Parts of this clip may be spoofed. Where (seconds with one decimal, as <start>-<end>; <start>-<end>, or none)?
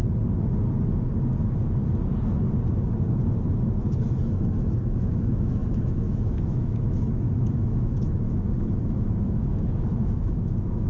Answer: 4.8-10.9